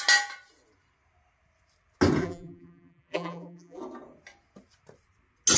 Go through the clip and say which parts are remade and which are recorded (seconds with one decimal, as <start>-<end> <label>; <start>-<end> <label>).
0.0-2.2 recorded; 2.2-3.8 remade; 3.8-5.6 recorded